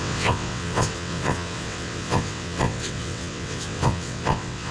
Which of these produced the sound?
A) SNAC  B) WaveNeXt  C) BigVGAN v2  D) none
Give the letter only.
B